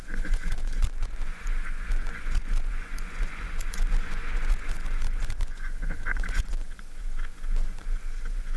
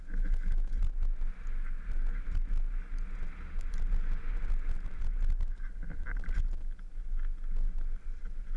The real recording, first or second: second